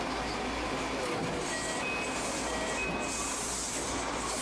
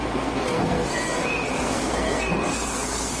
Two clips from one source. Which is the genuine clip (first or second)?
first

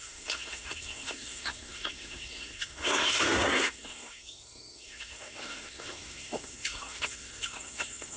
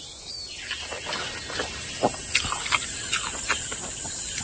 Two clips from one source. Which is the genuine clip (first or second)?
second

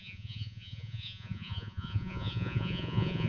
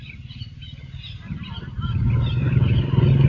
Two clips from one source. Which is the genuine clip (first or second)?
second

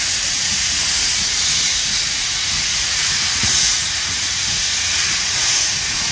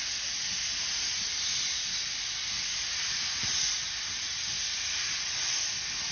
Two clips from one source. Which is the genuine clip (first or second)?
second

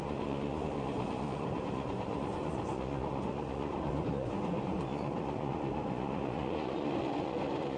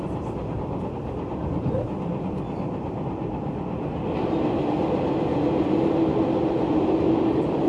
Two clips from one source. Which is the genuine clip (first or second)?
second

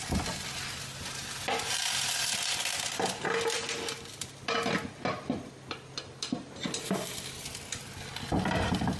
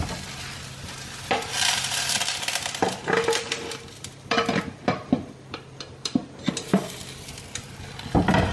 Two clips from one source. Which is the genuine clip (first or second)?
first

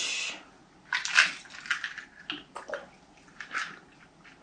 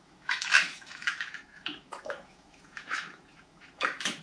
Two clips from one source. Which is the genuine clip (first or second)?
first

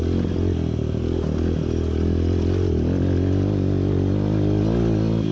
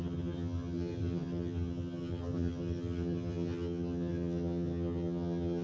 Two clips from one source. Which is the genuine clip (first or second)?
first